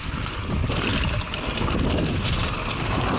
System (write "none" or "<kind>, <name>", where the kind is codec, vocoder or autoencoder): none